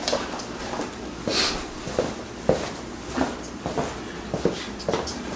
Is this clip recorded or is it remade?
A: recorded